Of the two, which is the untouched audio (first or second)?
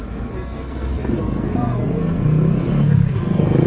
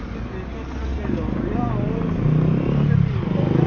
second